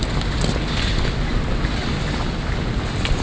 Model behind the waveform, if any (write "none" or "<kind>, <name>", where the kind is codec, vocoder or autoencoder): none